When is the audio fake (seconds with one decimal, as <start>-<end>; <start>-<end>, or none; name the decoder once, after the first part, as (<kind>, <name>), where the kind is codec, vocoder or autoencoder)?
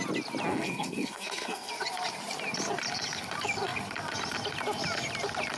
0.5-1.7 (codec, SNAC)